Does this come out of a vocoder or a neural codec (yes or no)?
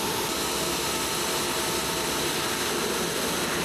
no